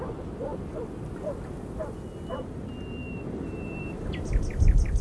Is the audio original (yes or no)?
yes